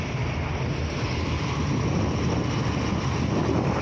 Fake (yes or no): no